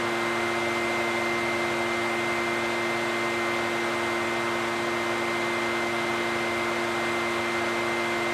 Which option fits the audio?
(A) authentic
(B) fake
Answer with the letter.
A